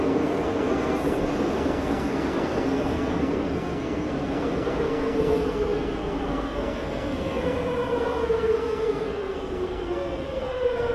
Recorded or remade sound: remade